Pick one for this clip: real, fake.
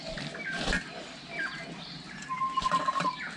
fake